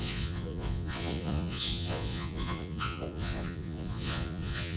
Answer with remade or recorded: remade